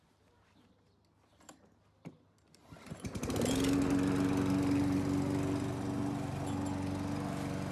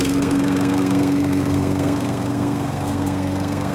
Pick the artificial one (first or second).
second